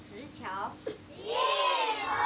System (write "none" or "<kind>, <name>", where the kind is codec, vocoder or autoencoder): none